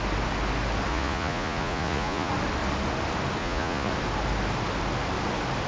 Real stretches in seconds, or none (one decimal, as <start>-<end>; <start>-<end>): 0.0-0.9; 2.3-3.4; 3.9-5.7